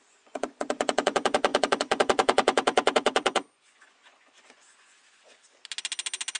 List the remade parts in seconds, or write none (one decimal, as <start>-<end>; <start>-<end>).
0.0-5.4

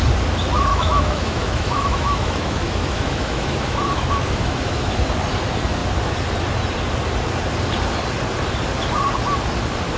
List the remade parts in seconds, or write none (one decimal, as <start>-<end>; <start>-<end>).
0.7-5.0